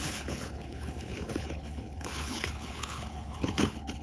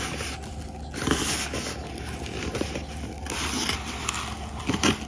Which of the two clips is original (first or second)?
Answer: second